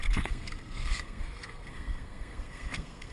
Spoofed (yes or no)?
yes